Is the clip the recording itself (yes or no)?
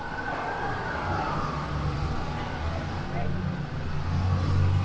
yes